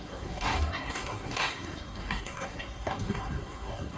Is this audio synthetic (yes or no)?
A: yes